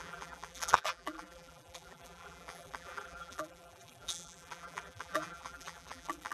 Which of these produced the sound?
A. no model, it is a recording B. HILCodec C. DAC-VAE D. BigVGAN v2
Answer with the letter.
D